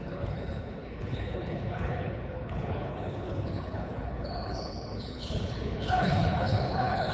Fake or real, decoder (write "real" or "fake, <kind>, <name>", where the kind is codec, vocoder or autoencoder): fake, codec, HILCodec